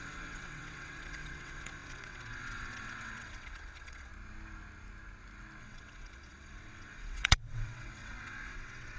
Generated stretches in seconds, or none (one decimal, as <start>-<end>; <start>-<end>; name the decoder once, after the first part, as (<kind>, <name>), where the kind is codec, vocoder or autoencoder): 0.0-4.1 (vocoder, WaveNeXt); 5.6-9.0